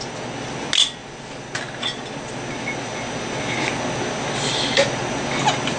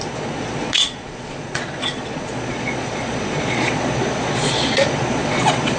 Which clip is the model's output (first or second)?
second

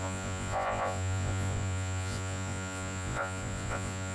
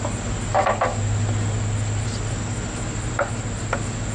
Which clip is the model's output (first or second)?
first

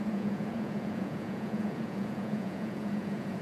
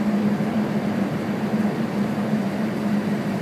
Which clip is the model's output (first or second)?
first